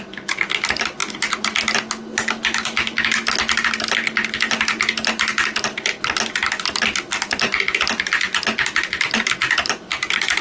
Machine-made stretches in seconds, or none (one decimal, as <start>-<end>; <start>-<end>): none